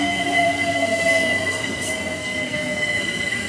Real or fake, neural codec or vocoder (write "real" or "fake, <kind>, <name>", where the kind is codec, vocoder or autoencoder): fake, codec, SNAC